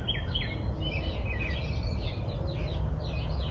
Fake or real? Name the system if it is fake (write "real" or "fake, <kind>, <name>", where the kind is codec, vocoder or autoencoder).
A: real